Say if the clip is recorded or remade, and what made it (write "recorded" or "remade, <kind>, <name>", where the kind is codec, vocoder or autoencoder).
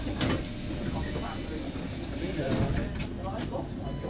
recorded